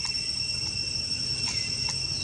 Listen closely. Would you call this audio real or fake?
real